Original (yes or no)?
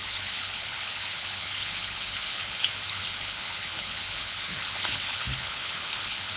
no